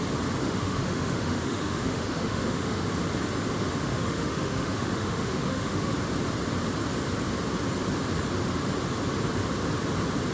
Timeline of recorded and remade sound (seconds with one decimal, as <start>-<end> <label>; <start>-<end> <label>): 0.0-0.4 recorded; 0.4-2.9 remade; 2.9-3.8 recorded; 3.8-5.9 remade; 5.9-10.3 recorded